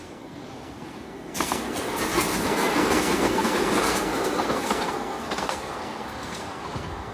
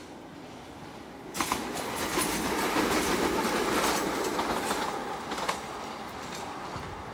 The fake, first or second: first